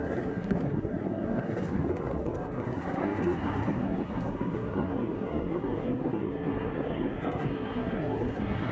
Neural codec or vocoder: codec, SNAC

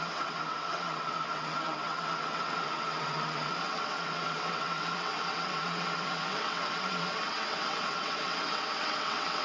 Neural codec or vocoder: vocoder, WaveNeXt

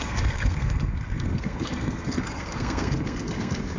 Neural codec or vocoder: codec, SNAC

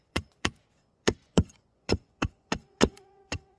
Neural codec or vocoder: vocoder, Vocos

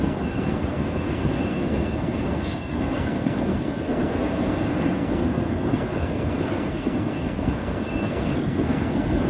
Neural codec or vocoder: codec, SNAC